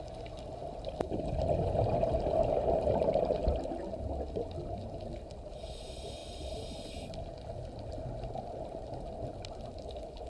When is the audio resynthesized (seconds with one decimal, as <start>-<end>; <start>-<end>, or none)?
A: none